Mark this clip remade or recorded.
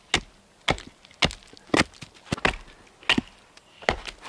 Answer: recorded